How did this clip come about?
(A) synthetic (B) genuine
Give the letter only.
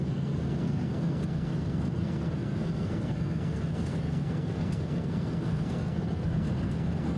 A